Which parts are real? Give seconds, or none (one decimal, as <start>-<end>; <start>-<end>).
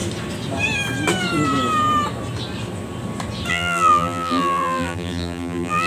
0.0-3.5